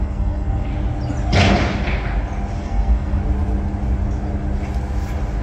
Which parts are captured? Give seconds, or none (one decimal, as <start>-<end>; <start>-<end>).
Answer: 0.7-2.6; 3.2-5.4

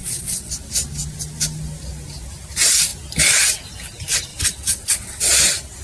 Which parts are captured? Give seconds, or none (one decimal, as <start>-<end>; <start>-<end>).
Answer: 0.5-4.3; 5.3-5.8

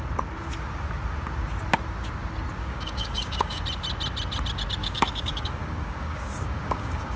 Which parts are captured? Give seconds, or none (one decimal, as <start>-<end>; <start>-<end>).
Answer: 0.0-2.6; 3.6-4.8

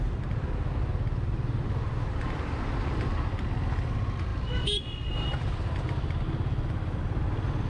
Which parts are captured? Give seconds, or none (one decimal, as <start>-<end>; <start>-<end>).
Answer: 0.0-7.7